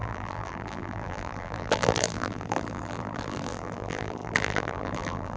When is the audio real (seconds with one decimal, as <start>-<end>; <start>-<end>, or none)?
none